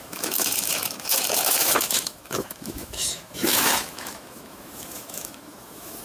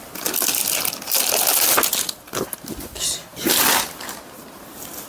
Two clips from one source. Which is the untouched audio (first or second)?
second